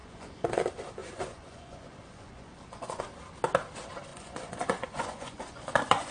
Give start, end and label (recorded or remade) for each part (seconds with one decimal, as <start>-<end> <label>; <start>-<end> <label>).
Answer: 0.0-0.6 remade; 0.6-1.0 recorded; 1.0-3.0 remade; 3.0-4.1 recorded; 4.1-6.1 remade